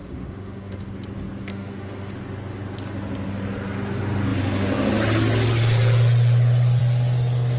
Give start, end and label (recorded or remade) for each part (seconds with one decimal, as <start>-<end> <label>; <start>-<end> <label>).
0.0-0.9 remade; 0.9-1.5 recorded; 1.5-2.1 remade; 2.1-7.6 recorded